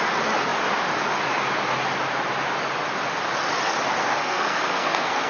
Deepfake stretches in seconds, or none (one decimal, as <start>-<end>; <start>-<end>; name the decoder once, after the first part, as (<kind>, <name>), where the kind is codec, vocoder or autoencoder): 4.0-5.3 (codec, SNAC)